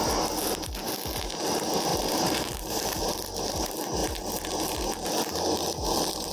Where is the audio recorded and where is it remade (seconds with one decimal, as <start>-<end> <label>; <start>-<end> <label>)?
0.0-1.9 recorded; 1.9-3.0 remade; 3.0-6.3 recorded